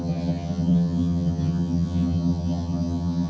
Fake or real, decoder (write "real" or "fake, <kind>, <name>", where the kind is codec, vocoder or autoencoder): fake, vocoder, HiFi-GAN